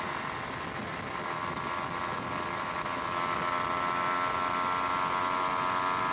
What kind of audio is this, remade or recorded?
recorded